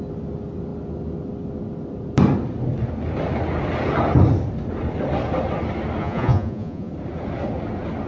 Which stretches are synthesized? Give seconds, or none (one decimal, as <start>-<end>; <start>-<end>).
6.0-6.9